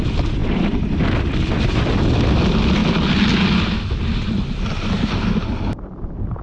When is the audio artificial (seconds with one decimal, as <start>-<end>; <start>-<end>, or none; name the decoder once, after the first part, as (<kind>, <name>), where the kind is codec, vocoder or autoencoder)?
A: 0.4-1.0 (vocoder, BigVGAN v2)